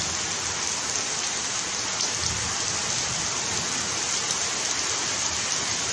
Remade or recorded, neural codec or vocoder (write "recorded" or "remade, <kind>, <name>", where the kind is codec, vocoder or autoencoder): recorded